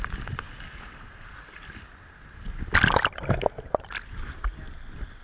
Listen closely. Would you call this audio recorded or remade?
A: recorded